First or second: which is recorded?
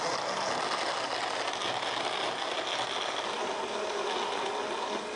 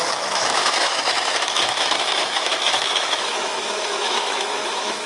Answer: first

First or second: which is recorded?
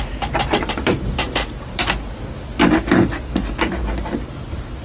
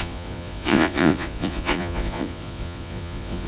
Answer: first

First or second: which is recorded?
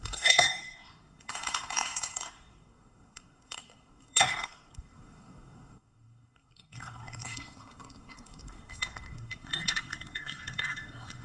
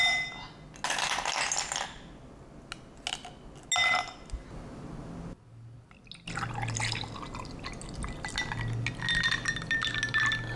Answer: second